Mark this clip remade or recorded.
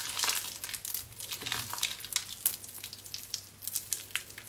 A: recorded